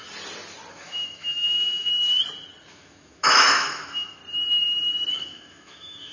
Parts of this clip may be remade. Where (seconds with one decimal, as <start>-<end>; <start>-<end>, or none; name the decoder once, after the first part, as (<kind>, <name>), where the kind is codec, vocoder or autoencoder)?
0.7-1.9 (autoencoder, DAC-VAE); 2.7-4.2; 5.1-6.1